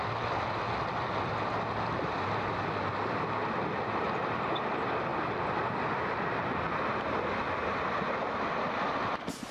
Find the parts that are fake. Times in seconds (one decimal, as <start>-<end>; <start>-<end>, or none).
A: none